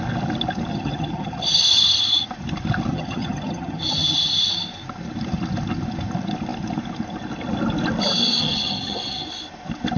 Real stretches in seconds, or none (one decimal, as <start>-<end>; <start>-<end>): 0.0-0.7; 2.3-2.9; 4.5-8.4; 9.3-10.0